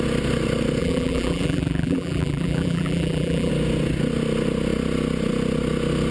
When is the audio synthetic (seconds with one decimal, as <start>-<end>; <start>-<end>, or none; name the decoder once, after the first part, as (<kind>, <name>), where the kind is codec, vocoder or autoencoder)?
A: 0.8-3.5 (vocoder, BigVGAN v2)